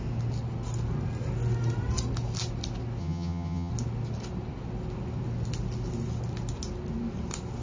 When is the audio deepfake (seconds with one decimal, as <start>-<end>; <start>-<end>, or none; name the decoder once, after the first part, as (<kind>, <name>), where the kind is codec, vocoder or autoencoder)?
3.0-3.7 (vocoder, HiFi-GAN)